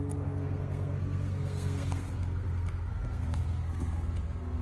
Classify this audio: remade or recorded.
remade